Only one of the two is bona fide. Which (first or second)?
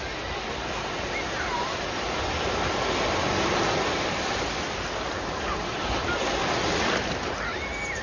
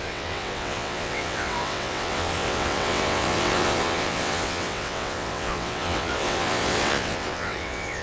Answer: first